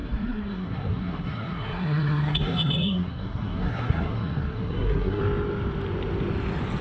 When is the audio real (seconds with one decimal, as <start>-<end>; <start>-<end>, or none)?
5.2-6.8